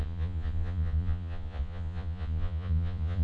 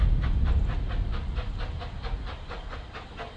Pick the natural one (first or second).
second